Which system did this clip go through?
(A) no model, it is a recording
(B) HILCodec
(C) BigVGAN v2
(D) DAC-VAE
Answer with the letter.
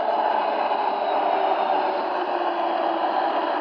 A